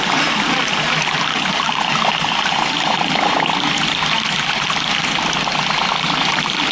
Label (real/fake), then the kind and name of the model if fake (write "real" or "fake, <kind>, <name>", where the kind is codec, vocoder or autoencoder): real